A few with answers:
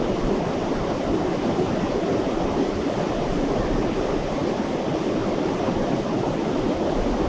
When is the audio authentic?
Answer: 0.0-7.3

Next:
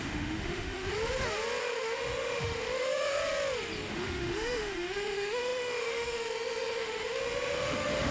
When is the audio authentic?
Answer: 0.9-1.6; 3.2-3.9

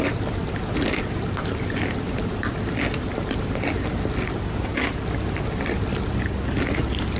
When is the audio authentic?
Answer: 0.0-7.2